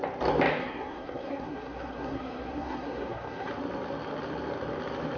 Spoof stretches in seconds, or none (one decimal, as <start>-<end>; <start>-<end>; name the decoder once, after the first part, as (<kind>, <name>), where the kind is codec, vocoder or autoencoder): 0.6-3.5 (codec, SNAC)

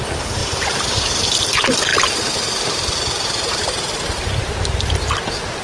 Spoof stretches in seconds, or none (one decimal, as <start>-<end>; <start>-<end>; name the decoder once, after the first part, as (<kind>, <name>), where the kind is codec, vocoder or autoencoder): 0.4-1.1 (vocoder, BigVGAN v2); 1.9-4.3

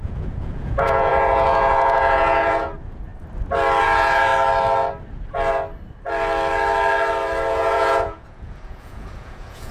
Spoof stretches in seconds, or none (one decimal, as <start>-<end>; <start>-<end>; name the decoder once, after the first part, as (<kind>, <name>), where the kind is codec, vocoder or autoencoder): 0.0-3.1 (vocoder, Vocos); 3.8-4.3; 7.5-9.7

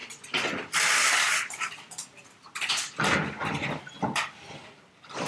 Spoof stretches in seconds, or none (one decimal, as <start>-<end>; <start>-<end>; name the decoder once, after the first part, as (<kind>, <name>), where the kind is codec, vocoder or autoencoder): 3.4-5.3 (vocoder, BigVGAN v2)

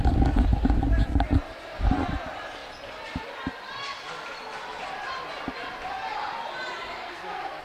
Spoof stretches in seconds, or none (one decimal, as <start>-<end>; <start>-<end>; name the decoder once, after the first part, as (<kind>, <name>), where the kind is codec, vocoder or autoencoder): 7.0-7.6 (codec, SNAC)

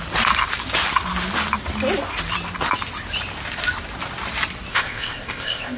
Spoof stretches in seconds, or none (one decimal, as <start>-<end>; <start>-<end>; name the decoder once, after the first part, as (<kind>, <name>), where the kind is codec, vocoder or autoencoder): 4.7-5.8 (codec, ZipCodec)